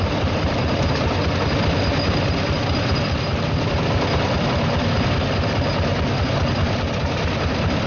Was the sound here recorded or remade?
recorded